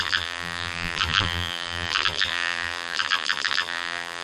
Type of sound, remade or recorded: remade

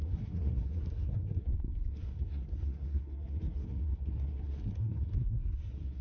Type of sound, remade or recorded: remade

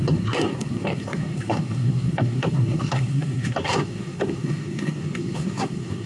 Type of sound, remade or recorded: remade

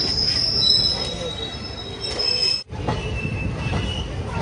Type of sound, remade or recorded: recorded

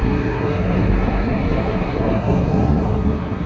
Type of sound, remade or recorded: remade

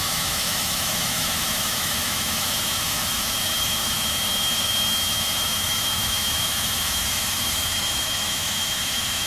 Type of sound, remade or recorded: remade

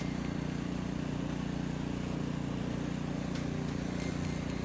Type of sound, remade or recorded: recorded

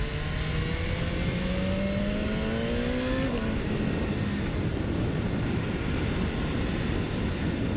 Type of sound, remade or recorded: recorded